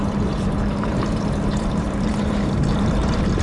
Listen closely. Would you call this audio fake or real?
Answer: fake